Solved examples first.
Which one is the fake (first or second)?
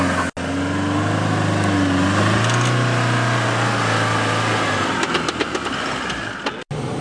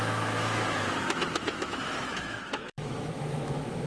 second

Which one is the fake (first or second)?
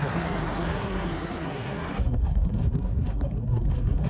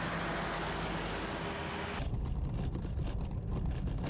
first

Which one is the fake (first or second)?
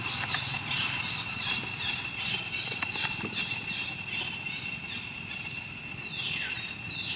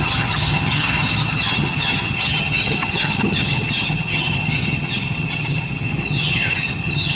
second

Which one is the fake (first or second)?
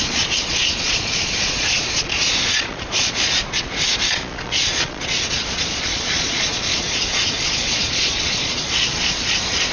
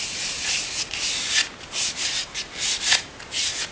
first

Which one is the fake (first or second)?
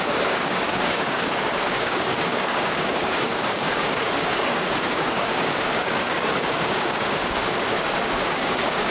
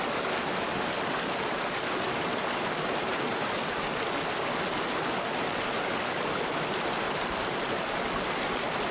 first